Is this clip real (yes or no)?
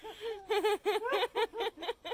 yes